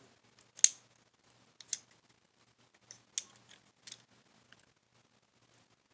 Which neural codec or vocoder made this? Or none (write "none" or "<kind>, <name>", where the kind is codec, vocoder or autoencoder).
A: none